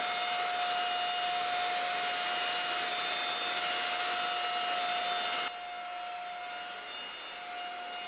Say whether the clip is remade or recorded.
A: recorded